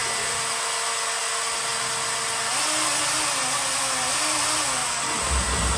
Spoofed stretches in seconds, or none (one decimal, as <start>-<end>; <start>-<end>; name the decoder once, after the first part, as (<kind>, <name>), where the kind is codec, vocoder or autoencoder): none